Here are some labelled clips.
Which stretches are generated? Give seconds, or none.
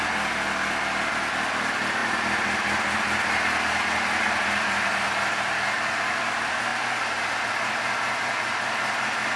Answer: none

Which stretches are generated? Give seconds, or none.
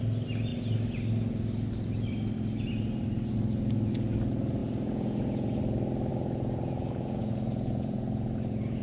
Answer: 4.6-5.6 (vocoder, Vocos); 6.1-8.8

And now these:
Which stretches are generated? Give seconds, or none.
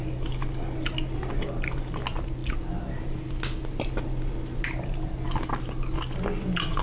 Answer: none